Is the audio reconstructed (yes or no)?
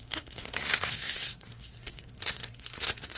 yes